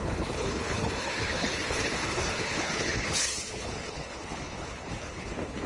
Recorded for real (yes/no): no